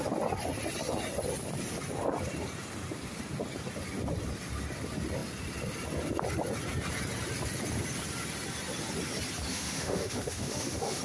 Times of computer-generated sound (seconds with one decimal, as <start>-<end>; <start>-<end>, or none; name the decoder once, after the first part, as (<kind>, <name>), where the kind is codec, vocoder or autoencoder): 9.5-11.0 (autoencoder, DAC-VAE)